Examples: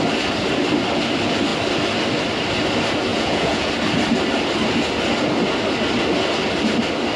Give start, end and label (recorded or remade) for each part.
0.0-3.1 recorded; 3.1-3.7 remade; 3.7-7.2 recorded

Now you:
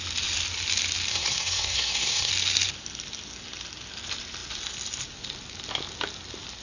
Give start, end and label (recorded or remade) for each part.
0.0-1.1 recorded; 1.1-2.3 remade; 2.3-6.6 recorded

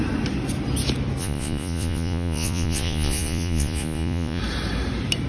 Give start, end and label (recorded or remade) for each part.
0.0-1.2 recorded; 1.2-4.4 remade; 4.4-5.3 recorded